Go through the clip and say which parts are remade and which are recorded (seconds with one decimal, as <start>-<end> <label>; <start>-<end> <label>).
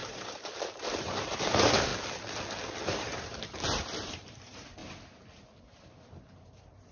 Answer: 0.0-1.9 remade; 1.9-2.8 recorded; 2.8-4.8 remade; 4.8-5.6 recorded; 5.6-6.9 remade